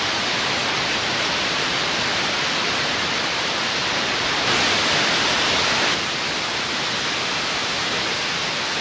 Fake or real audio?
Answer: real